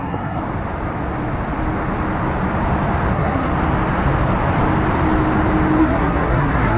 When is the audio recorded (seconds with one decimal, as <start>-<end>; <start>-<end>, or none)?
0.4-3.1; 3.5-5.8